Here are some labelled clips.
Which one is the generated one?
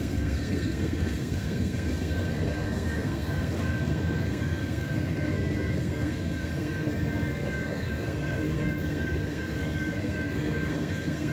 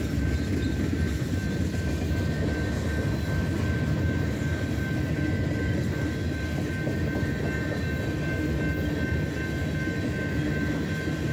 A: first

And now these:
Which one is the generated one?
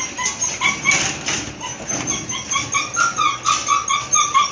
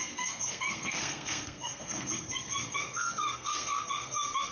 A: second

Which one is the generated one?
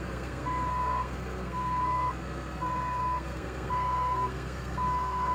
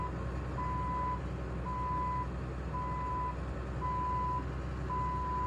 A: first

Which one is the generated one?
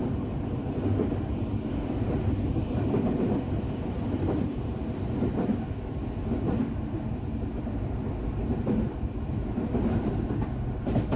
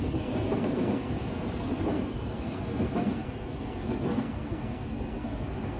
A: second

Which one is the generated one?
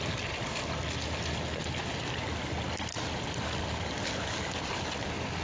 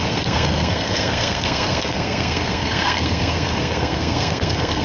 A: second